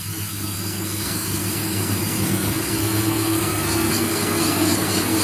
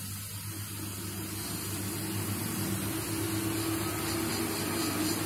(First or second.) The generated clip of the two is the first